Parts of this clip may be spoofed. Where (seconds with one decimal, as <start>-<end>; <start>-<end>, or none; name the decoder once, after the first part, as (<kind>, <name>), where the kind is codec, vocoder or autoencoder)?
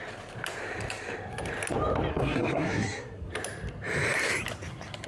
2.1-3.3 (codec, SNAC)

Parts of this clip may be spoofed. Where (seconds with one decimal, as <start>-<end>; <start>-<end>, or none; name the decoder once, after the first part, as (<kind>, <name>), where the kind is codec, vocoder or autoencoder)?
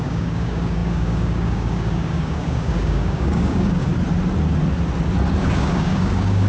0.0-3.9 (codec, DAC); 5.4-6.5